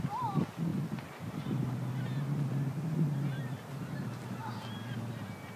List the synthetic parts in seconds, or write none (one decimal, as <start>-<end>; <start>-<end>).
none